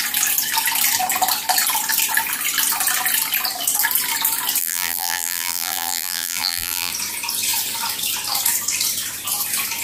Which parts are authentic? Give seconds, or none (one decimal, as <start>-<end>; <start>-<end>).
0.0-4.6; 6.9-9.8